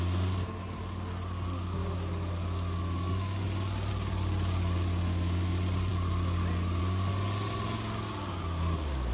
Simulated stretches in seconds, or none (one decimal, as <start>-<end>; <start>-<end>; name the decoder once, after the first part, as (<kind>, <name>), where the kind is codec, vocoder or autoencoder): none